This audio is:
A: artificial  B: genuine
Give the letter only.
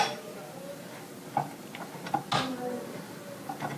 B